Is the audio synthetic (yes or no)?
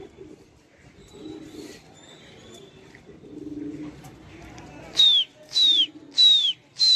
no